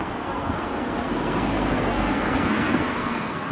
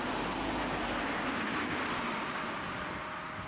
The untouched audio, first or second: second